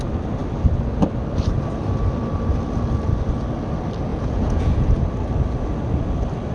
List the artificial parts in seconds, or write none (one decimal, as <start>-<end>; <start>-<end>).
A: 4.1-5.0